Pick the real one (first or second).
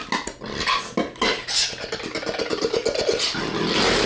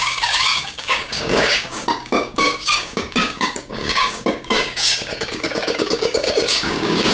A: first